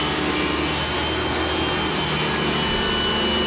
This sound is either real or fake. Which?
real